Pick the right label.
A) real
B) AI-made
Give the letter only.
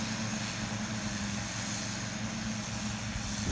A